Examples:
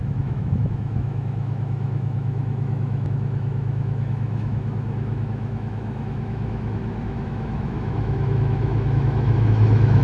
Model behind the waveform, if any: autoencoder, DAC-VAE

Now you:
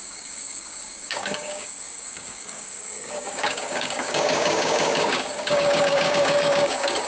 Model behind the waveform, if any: codec, DAC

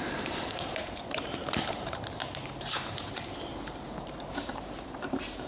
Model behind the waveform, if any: vocoder, BigVGAN v2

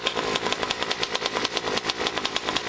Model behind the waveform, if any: none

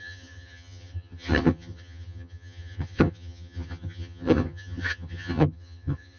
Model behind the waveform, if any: vocoder, HiFi-GAN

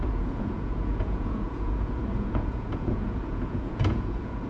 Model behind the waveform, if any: vocoder, Vocos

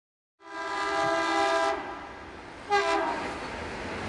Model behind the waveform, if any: none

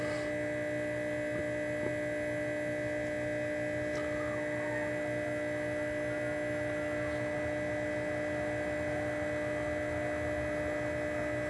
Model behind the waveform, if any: none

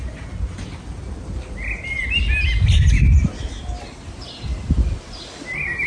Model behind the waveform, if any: none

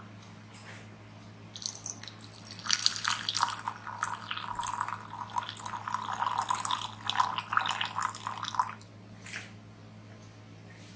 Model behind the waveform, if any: none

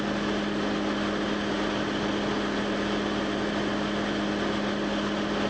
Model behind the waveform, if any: none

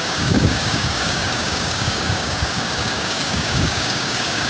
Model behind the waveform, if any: codec, DAC